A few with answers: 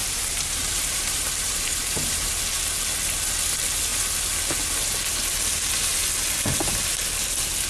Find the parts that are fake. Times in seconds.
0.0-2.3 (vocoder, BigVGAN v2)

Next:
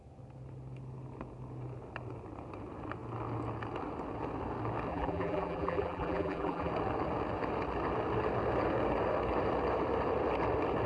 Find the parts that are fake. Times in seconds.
4.9-6.7 (vocoder, BigVGAN v2)

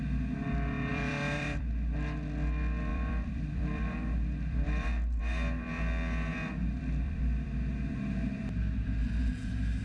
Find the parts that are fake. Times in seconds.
0.9-1.6 (vocoder, BigVGAN v2); 2.9-5.2; 6.6-7.9